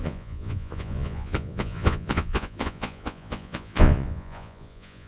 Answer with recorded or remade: remade